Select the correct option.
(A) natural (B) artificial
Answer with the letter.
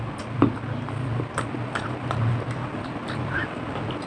A